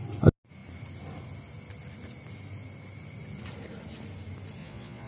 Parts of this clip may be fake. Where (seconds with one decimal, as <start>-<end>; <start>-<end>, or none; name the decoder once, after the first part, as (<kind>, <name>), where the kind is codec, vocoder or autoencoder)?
4.6-5.1 (vocoder, Vocos)

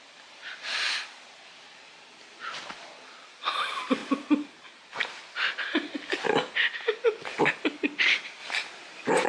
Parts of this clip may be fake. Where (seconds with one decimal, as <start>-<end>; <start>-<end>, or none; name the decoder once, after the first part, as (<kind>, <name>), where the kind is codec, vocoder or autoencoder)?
none

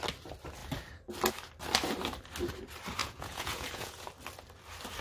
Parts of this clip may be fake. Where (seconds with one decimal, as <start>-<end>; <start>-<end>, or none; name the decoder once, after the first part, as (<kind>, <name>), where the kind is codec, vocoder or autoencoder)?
3.0-4.1 (vocoder, Vocos)

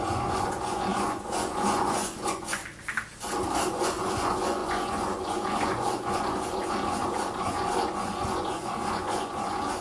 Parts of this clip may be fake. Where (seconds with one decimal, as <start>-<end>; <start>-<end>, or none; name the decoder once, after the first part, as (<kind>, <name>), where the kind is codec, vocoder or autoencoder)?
0.0-2.6 (vocoder, Vocos); 3.7-9.8

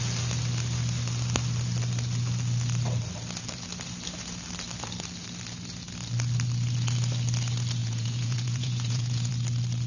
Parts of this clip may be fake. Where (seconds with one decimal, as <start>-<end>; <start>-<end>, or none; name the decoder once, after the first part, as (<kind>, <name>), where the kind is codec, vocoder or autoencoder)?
7.8-9.3 (vocoder, Vocos)

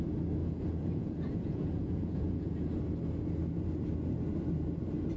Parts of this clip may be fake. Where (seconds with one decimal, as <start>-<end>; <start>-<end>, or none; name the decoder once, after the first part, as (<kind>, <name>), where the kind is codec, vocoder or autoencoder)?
0.4-2.7 (vocoder, Vocos)

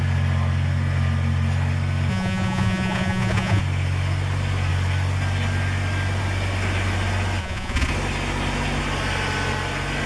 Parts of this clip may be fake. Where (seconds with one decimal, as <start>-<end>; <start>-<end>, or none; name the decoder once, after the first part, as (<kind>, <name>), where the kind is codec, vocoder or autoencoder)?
2.1-3.6 (vocoder, Vocos); 7.4-7.9